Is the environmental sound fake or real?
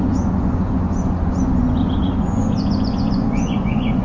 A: fake